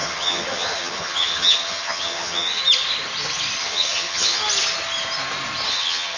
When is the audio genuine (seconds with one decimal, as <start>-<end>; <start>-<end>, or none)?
2.6-3.6; 4.4-5.7